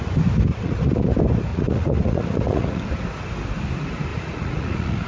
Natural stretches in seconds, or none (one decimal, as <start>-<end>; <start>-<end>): 0.0-0.5; 1.1-1.5; 2.8-4.1